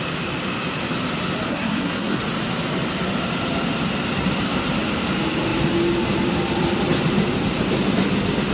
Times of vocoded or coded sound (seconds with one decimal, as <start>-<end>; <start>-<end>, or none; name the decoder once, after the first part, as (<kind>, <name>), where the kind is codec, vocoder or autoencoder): 1.5-2.2 (codec, SNAC)